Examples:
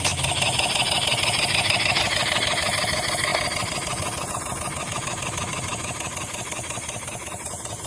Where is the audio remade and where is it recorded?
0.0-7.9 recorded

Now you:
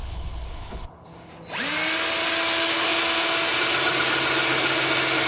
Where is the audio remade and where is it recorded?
0.0-1.3 remade; 1.3-5.3 recorded

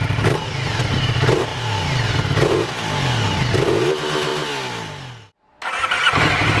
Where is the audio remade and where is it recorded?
0.0-6.6 recorded

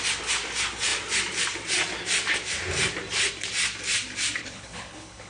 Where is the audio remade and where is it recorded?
0.0-4.4 recorded; 4.4-5.3 remade

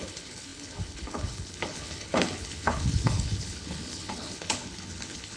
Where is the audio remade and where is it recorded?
0.0-5.4 remade

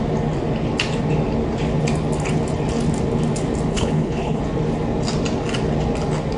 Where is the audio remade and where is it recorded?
0.0-3.7 recorded; 3.7-4.4 remade; 4.4-6.4 recorded

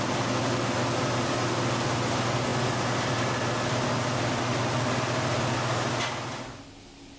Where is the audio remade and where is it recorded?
0.0-7.2 recorded